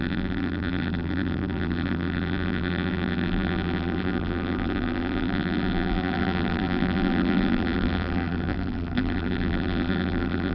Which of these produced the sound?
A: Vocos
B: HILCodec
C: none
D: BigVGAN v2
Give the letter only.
D